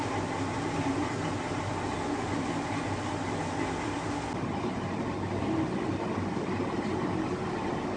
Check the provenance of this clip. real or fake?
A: real